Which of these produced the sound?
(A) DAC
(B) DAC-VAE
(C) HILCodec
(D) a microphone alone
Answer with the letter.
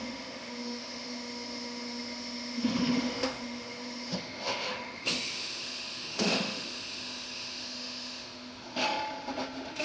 B